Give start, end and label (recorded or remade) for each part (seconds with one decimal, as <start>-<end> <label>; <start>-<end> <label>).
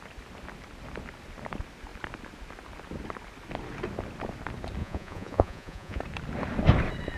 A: 0.0-4.8 recorded; 4.8-6.0 remade; 6.0-7.2 recorded